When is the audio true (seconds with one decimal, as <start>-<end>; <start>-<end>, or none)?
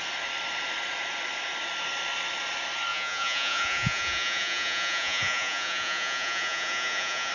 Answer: 0.0-2.9